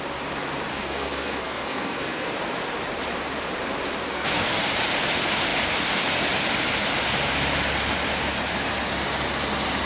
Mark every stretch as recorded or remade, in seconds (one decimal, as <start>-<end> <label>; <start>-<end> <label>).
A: 0.0-0.7 recorded; 0.7-2.3 remade; 2.3-4.1 recorded; 4.1-4.6 remade; 4.6-9.9 recorded